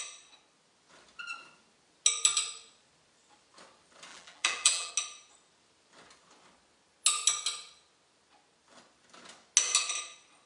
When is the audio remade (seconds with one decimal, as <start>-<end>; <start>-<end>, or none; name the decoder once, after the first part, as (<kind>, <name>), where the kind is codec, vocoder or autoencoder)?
4.1-4.9 (vocoder, BigVGAN v2)